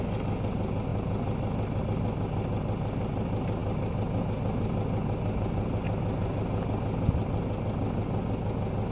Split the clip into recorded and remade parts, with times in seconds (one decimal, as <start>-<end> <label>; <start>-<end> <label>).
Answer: 0.0-8.9 recorded